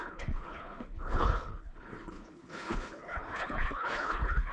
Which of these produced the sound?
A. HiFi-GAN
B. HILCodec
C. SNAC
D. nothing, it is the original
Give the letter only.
B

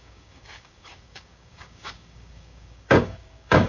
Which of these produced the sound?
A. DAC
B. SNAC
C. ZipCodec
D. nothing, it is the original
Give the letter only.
A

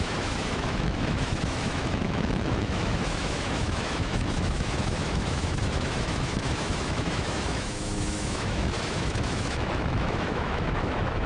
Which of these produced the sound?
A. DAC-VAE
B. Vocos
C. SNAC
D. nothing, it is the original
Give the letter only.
A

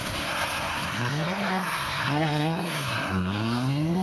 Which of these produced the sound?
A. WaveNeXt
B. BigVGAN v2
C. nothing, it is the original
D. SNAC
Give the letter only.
D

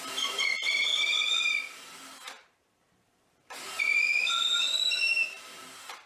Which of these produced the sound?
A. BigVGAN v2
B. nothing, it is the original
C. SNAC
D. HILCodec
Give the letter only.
A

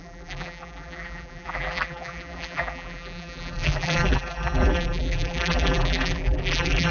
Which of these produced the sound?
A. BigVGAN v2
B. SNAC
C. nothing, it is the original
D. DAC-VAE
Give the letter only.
A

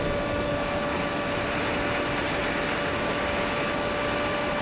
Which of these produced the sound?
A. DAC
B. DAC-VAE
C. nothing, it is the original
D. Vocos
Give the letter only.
C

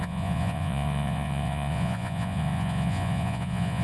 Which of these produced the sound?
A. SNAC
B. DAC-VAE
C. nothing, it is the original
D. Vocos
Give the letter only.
D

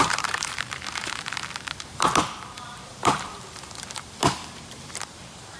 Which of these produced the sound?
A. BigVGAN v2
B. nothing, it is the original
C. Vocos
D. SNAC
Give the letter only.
A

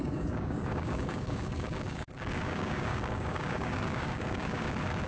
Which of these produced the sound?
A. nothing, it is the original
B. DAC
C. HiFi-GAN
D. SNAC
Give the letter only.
B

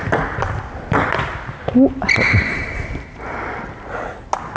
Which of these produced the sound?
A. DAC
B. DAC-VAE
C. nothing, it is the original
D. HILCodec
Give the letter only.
C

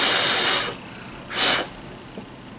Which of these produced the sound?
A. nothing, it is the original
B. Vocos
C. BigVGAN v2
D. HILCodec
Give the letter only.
A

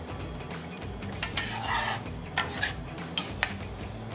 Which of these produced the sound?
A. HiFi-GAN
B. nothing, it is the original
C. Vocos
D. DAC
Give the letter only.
B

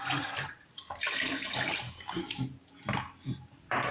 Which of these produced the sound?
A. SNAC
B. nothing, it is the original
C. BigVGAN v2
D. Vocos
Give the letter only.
C